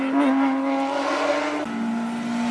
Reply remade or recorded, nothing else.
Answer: recorded